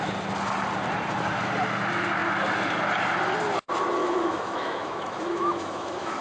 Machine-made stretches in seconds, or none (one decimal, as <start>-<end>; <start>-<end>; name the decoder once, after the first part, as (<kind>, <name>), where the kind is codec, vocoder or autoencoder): 4.0-6.2 (autoencoder, DAC-VAE)